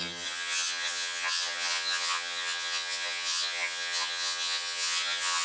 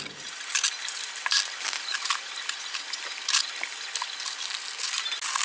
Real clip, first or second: second